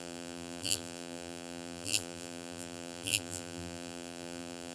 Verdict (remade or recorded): remade